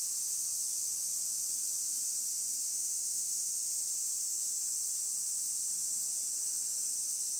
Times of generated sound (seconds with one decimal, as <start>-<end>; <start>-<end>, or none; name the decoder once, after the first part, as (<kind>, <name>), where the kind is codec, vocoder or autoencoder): 2.7-3.5 (autoencoder, DAC-VAE)